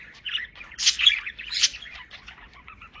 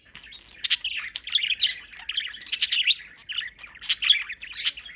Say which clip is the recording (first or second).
second